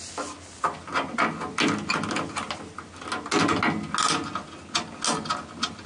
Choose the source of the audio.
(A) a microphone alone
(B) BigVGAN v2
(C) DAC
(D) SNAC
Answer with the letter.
A